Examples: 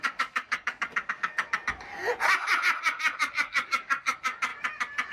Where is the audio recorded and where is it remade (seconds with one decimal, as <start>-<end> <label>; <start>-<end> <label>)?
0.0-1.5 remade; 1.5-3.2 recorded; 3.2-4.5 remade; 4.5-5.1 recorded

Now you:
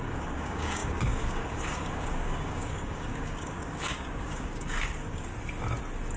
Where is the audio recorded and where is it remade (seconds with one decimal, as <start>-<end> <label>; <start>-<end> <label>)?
0.0-5.3 remade; 5.3-6.2 recorded

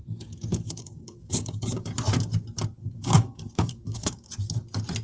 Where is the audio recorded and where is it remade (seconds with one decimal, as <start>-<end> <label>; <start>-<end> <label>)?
0.0-0.5 recorded; 0.5-1.9 remade; 1.9-2.8 recorded; 2.8-4.3 remade; 4.3-5.0 recorded

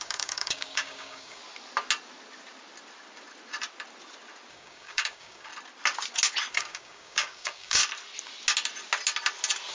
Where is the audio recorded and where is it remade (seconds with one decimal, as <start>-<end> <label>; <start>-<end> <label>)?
0.0-1.4 remade; 1.4-4.5 recorded; 4.5-5.5 remade; 5.5-6.5 recorded; 6.5-7.8 remade; 7.8-9.7 recorded

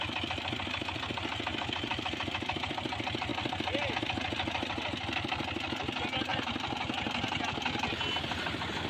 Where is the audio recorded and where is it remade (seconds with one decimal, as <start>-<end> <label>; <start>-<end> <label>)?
0.0-8.9 recorded

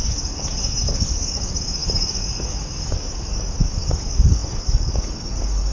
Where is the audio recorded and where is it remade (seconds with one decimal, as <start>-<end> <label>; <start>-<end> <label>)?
0.0-5.7 remade

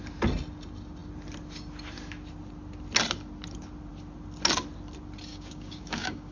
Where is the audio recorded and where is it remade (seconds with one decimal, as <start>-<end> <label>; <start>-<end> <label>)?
0.0-5.3 recorded; 5.3-6.3 remade